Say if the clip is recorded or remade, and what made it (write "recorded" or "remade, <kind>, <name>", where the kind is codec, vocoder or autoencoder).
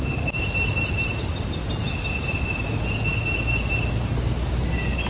recorded